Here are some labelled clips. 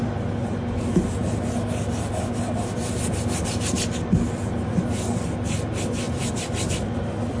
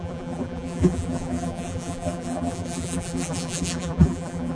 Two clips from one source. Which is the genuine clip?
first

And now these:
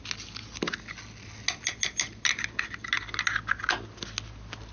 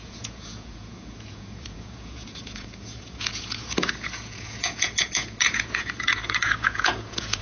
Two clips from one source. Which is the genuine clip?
first